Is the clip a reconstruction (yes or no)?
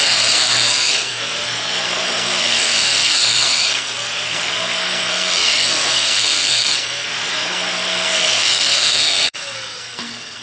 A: yes